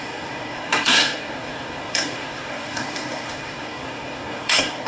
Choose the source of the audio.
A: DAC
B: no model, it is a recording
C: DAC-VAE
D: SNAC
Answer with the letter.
D